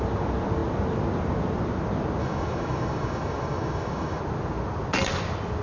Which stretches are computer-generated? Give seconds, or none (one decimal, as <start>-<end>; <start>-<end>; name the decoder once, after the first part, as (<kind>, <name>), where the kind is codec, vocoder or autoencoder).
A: 2.2-4.2 (autoencoder, DAC-VAE)